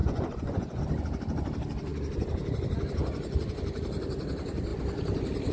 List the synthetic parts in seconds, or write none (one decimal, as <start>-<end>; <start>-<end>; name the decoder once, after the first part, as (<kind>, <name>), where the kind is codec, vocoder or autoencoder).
0.0-0.8 (vocoder, Vocos)